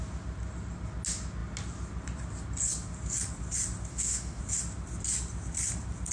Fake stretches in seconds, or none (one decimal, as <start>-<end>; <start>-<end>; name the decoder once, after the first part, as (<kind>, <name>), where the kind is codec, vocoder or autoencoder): 3.9-4.4 (autoencoder, DAC-VAE)